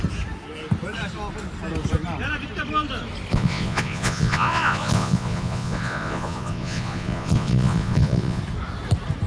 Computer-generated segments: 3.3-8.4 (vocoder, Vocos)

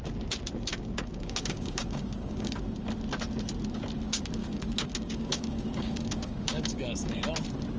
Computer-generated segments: 0.7-2.6 (codec, DAC); 4.4-7.2

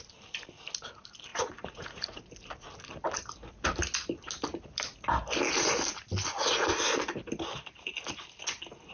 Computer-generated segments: 1.3-2.3 (vocoder, Vocos)

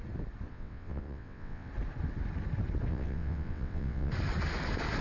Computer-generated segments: 0.5-1.7 (vocoder, WaveNeXt); 2.9-4.1

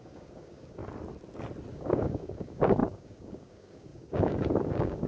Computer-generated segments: 0.0-0.8 (codec, DAC); 1.7-5.1

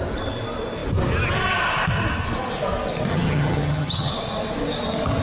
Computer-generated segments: 3.1-4.1 (vocoder, HiFi-GAN)